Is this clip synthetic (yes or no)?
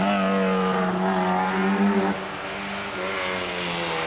no